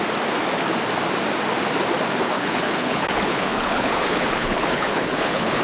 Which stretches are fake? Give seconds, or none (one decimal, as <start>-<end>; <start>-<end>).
2.2-5.6